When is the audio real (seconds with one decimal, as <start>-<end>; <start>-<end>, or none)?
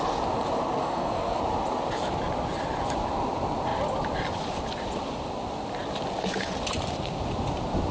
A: 0.0-0.8; 1.4-7.9